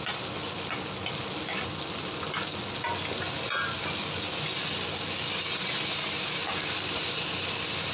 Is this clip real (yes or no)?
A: yes